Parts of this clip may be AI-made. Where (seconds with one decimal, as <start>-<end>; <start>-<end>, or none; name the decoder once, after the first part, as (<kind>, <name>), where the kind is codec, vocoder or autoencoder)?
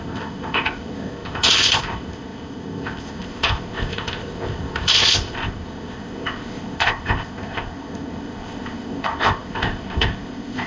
0.0-10.7 (codec, ZipCodec)